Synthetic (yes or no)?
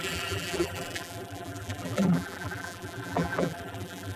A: yes